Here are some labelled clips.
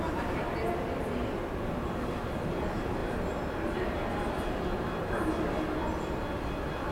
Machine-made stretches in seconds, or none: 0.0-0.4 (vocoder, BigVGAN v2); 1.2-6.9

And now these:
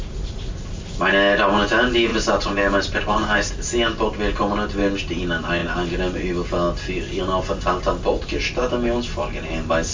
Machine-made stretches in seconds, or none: 2.1-3.5 (vocoder, BigVGAN v2)

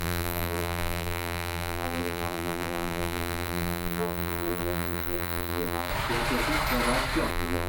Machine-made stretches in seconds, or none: 0.0-5.9 (vocoder, BigVGAN v2); 7.3-7.7